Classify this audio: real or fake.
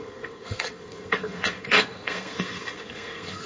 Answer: fake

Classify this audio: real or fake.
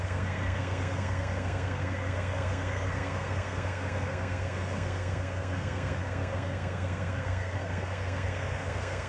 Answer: fake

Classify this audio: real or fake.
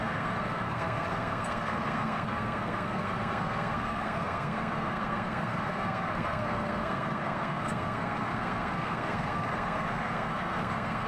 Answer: fake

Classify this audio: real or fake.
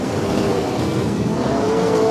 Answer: fake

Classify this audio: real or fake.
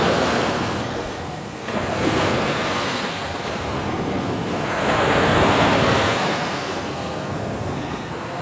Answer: fake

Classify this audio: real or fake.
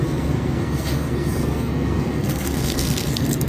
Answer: fake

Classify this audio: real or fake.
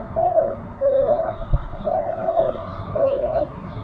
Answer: fake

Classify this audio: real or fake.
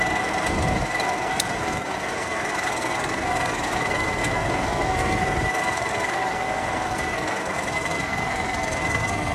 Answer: fake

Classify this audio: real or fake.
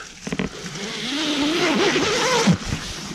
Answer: real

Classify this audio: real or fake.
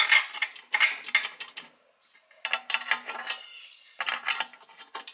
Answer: real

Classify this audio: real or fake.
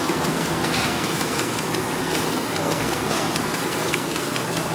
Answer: fake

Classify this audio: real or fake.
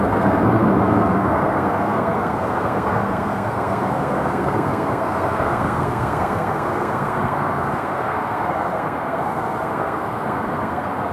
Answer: fake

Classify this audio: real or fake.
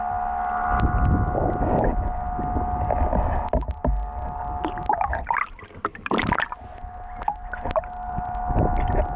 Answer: real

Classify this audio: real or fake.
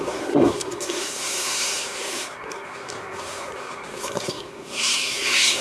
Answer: fake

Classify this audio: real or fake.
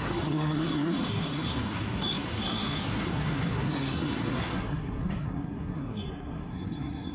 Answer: fake